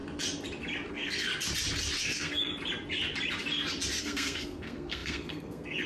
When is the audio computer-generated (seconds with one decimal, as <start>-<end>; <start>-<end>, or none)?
0.9-1.3; 2.0-2.5; 4.0-5.9